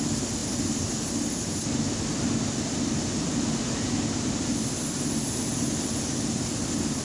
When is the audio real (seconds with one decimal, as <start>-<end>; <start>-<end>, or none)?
0.0-7.0